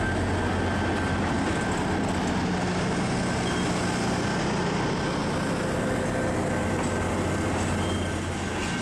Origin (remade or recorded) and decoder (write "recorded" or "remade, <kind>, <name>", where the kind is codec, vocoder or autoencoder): recorded